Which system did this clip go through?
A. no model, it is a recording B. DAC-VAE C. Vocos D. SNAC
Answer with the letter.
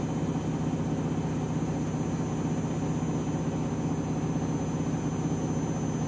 A